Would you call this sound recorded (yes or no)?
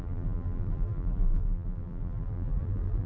no